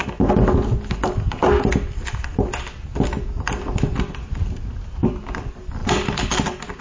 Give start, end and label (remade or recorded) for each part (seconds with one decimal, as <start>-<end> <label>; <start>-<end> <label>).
0.0-6.8 recorded